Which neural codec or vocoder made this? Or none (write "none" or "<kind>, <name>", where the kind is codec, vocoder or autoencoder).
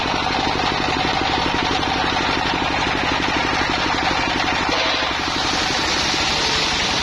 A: none